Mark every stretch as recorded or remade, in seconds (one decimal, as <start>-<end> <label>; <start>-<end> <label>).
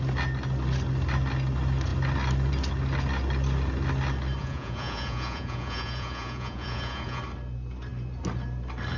0.0-4.4 recorded; 4.4-7.2 remade; 7.2-9.0 recorded